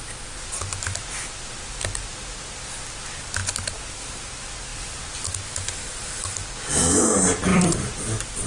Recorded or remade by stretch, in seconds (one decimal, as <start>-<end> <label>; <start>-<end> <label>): 0.0-7.5 recorded; 7.5-8.5 remade